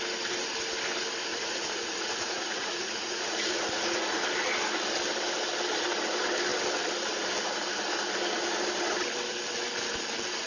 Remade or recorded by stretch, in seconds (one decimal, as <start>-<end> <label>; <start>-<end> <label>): 0.0-1.3 recorded; 1.3-4.2 remade; 4.2-10.5 recorded